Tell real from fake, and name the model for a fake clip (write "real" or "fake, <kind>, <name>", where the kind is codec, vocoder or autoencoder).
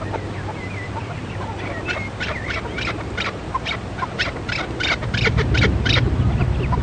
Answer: fake, vocoder, BigVGAN v2